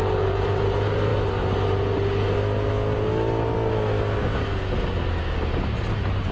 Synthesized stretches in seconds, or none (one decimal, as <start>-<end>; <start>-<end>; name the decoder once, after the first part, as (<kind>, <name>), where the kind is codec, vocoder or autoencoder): none